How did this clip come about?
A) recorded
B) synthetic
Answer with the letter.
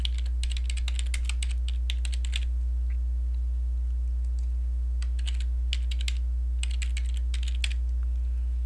A